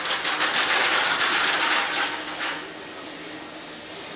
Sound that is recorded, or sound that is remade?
recorded